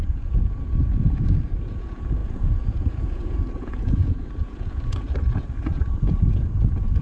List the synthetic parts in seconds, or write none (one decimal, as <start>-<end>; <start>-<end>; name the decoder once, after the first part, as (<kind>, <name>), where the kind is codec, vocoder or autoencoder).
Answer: 0.0-7.0 (vocoder, Vocos)